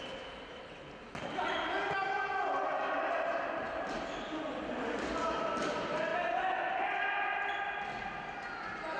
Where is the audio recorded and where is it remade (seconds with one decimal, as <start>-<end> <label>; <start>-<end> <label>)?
0.0-9.0 recorded